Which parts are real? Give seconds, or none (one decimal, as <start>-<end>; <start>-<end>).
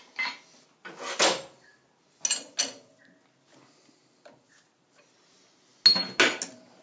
0.0-6.8